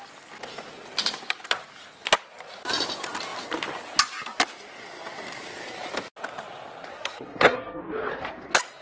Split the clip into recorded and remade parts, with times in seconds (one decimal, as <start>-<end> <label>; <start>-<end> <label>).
0.0-6.9 recorded; 6.9-7.8 remade; 7.8-8.8 recorded